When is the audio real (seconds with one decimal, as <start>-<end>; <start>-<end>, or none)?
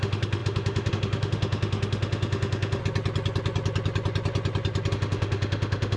2.8-4.9